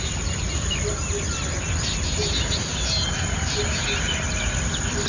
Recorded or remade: recorded